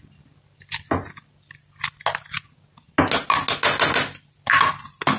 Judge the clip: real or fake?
real